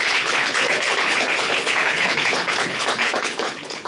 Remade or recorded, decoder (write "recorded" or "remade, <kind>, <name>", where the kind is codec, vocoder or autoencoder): remade, codec, HILCodec